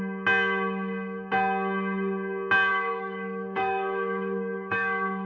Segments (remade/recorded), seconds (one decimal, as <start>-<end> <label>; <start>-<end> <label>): 0.0-2.7 recorded; 2.7-5.3 remade